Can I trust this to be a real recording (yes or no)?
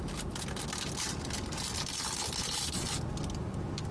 yes